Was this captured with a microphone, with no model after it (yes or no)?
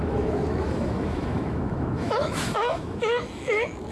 no